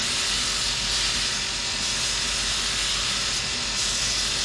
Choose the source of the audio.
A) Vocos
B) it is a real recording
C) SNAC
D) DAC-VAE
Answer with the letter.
B